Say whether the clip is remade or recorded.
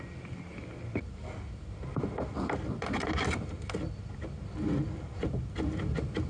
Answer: recorded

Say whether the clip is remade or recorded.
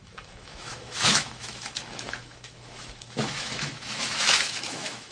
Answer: remade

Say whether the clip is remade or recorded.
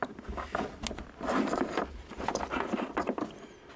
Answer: recorded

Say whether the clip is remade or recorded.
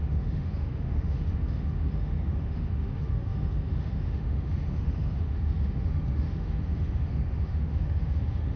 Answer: remade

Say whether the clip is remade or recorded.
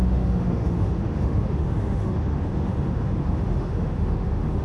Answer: remade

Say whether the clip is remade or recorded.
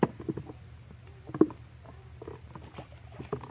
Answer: recorded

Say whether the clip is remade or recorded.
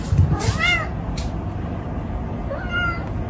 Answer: recorded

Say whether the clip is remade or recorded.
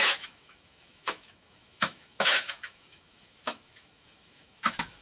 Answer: remade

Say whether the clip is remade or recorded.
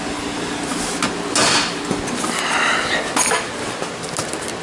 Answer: recorded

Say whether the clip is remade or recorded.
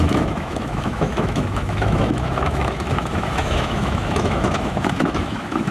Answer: remade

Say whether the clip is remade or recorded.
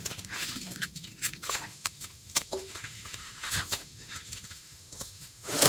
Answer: remade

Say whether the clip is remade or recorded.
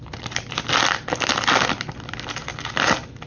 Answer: recorded